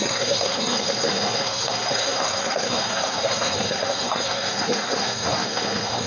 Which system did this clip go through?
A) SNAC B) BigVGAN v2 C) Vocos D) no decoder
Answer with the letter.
A